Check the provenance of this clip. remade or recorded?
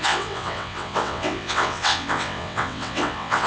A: remade